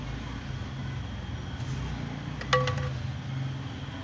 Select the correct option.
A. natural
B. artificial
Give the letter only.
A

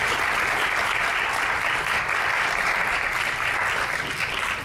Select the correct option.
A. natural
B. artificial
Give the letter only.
A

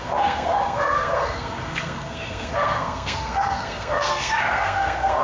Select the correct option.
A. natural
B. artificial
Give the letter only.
B